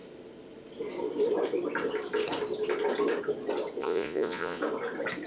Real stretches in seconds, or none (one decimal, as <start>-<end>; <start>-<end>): 0.0-3.8; 4.6-5.3